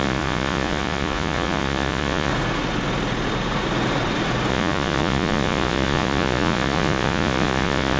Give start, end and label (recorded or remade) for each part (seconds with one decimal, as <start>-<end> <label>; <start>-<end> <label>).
0.0-2.3 remade; 2.3-4.5 recorded; 4.5-8.0 remade